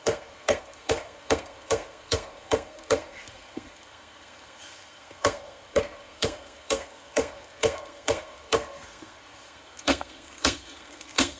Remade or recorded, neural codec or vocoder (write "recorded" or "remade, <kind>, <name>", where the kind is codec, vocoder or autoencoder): remade, codec, SNAC